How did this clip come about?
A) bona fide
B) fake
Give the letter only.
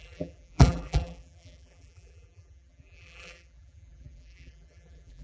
B